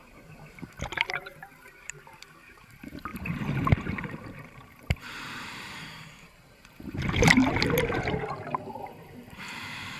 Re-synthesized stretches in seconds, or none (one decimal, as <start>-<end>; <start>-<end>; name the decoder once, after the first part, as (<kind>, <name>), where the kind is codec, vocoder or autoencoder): 0.0-7.4 (vocoder, BigVGAN v2); 8.7-10.0